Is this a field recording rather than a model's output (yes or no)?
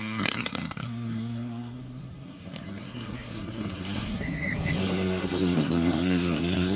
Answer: no